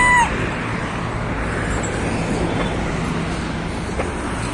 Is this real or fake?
real